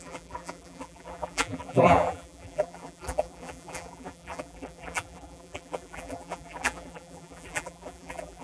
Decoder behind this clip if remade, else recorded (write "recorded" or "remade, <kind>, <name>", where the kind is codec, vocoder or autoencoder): remade, vocoder, BigVGAN v2